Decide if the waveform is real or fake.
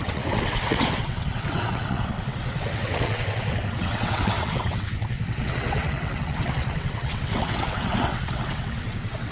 fake